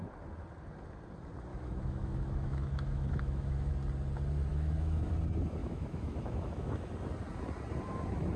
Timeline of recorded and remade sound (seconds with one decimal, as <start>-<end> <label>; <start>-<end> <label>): 0.0-1.5 recorded; 1.5-3.7 remade; 3.7-4.5 recorded; 4.5-5.1 remade; 5.1-5.6 recorded; 5.6-6.9 remade; 6.9-8.4 recorded